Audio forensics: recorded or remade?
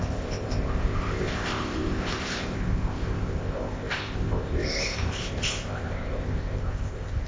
remade